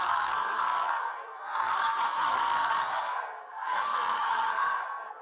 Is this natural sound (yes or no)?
no